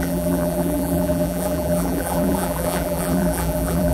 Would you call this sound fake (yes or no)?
yes